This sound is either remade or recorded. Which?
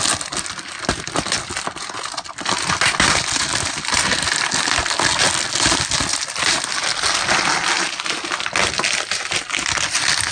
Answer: recorded